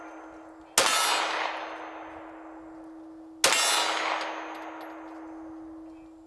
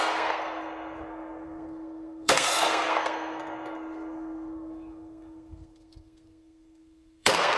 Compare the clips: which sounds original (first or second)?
first